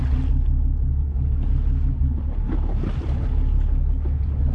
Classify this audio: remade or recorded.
recorded